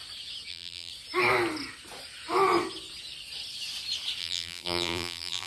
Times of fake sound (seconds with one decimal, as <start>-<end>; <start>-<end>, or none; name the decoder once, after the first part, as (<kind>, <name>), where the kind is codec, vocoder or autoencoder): 0.5-0.9 (vocoder, BigVGAN v2); 4.2-5.5